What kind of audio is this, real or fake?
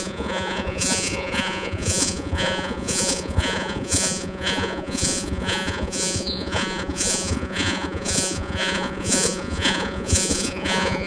fake